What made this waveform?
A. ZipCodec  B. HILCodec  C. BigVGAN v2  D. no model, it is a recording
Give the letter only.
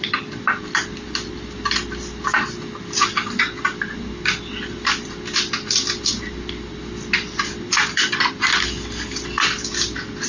D